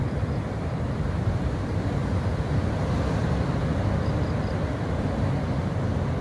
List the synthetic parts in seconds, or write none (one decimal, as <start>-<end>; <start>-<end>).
none